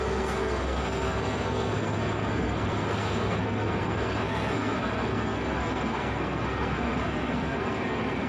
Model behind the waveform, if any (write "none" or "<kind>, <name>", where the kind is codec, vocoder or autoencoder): codec, SNAC